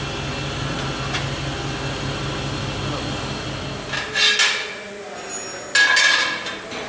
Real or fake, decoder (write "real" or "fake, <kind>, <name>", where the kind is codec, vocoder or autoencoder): real